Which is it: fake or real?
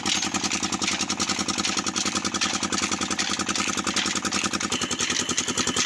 real